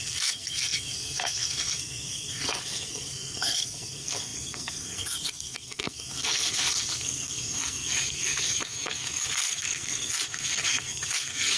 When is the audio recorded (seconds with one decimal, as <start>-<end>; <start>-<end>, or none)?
none